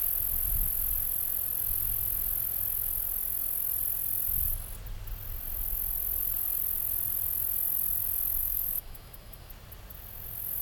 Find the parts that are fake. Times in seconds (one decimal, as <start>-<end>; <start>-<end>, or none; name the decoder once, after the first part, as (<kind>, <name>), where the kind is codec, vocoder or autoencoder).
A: 8.4-9.5 (autoencoder, DAC-VAE)